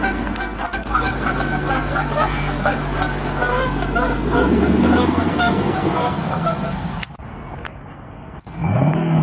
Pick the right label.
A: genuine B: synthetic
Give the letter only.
B